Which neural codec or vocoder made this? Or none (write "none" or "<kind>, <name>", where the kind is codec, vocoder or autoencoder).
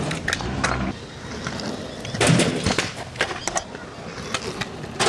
none